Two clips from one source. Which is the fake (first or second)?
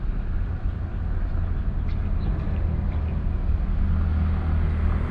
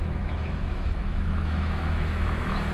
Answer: second